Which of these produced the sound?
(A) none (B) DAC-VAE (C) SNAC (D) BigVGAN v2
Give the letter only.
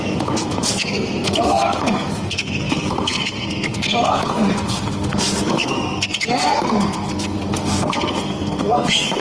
C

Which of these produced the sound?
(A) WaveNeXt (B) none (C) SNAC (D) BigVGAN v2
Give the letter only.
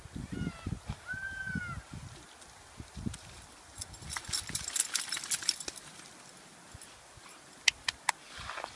B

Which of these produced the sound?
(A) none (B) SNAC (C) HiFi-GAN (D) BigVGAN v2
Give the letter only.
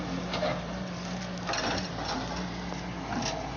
A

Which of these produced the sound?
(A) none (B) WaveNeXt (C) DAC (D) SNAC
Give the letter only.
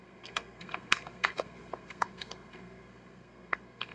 D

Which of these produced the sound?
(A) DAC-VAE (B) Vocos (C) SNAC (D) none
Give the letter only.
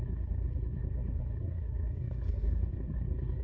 C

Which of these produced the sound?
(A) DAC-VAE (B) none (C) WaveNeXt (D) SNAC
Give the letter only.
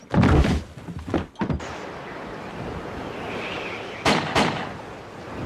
B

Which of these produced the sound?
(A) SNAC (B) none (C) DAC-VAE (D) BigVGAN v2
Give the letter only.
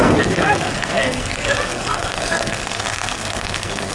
A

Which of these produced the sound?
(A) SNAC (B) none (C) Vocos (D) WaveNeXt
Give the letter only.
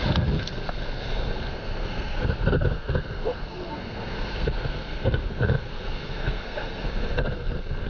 A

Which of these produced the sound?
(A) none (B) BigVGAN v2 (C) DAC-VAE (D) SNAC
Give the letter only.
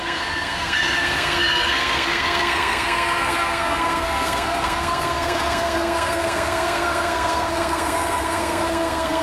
D